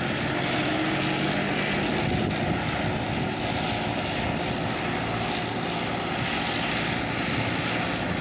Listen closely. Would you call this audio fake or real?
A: real